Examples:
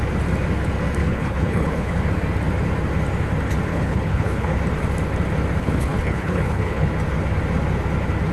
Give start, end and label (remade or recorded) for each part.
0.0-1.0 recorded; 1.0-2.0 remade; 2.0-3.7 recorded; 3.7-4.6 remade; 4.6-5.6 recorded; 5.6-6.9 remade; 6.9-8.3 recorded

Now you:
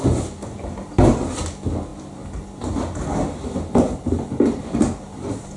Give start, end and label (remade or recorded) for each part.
0.0-5.6 recorded

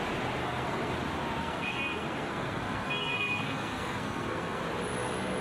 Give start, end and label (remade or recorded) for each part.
0.0-0.4 recorded; 0.4-0.9 remade; 0.9-1.4 recorded; 1.4-4.6 remade; 4.6-5.4 recorded

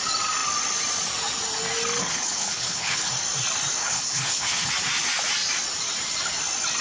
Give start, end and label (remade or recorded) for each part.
0.0-2.0 recorded; 2.0-3.1 remade; 3.1-3.8 recorded; 3.8-4.7 remade; 4.7-6.8 recorded

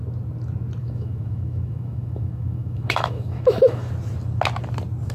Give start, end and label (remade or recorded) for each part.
0.0-0.8 recorded; 0.8-3.9 remade; 3.9-5.1 recorded

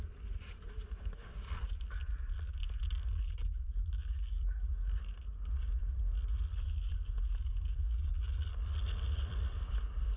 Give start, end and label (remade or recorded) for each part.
0.0-10.2 recorded

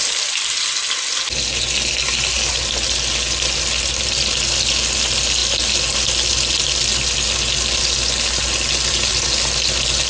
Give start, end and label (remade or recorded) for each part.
0.0-10.1 recorded

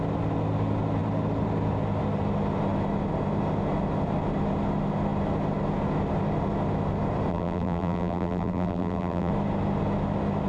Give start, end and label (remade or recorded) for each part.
0.0-7.3 recorded; 7.3-9.3 remade; 9.3-10.5 recorded